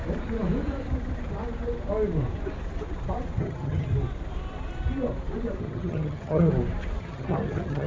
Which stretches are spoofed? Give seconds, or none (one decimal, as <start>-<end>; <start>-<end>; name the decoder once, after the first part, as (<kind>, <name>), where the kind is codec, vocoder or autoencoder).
3.4-3.9 (vocoder, HiFi-GAN); 5.6-6.5; 7.0-7.9